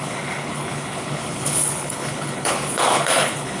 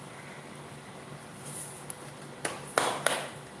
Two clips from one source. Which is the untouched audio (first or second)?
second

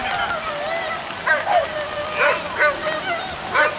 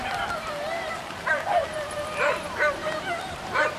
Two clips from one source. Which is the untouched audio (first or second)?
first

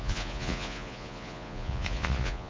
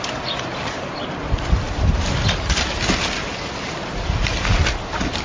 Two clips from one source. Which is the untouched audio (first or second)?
second